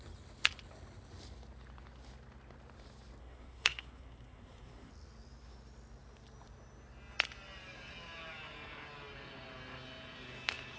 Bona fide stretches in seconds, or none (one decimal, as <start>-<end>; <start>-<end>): 0.0-3.2; 4.9-10.8